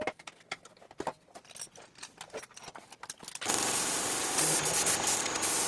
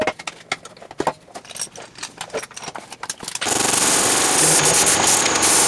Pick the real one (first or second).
second